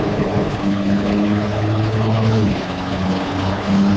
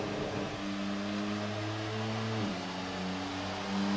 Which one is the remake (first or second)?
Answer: first